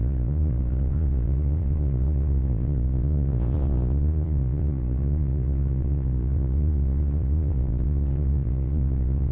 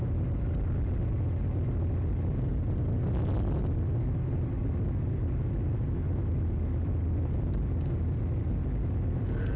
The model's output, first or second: first